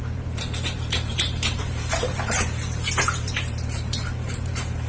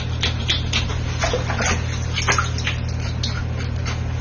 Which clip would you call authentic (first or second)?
second